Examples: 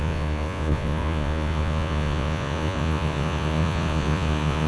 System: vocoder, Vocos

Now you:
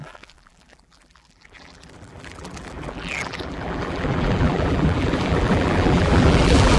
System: vocoder, BigVGAN v2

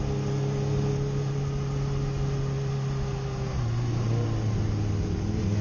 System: none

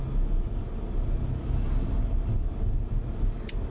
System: none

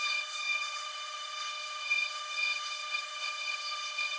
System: codec, SNAC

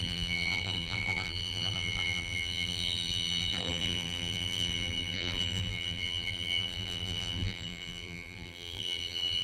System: vocoder, BigVGAN v2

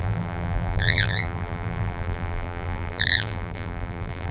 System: vocoder, BigVGAN v2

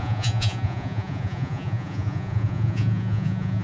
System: vocoder, Vocos